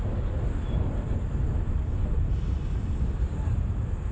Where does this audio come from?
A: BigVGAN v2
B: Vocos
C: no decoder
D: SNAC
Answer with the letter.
C